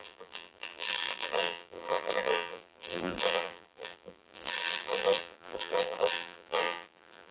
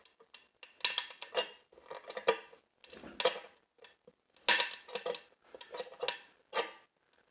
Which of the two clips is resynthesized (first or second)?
first